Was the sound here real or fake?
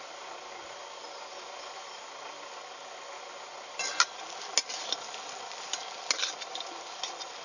real